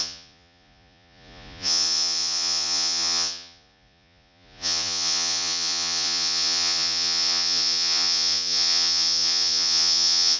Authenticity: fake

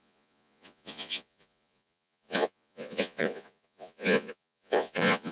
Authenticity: fake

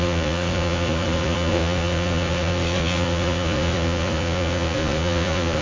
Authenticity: fake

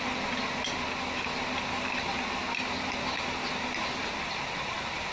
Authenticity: real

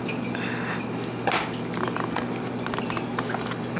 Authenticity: real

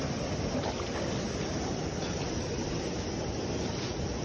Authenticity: real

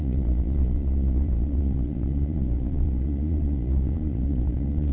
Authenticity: fake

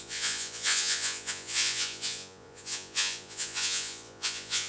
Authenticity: fake